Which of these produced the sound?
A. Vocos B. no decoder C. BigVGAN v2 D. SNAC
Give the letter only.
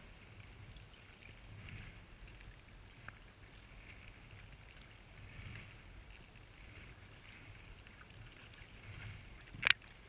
B